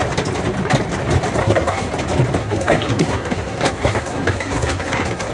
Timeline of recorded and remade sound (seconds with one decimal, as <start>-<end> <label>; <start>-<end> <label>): 0.0-1.4 recorded; 1.4-1.9 remade; 1.9-2.4 recorded; 2.4-5.3 remade